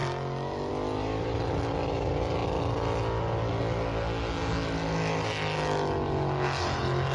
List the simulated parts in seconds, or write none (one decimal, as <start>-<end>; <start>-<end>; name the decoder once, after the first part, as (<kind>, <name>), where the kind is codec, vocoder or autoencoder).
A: none